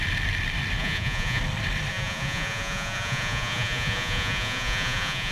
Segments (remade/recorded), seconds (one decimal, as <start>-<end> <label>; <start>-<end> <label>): 0.0-0.8 recorded; 0.8-1.4 remade; 1.4-1.9 recorded; 1.9-5.3 remade